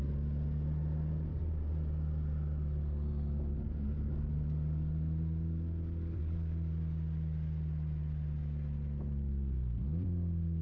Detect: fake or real real